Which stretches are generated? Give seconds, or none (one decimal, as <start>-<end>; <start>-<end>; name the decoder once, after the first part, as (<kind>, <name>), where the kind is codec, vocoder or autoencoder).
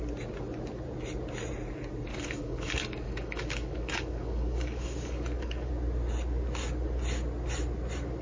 2.1-5.7 (codec, DAC)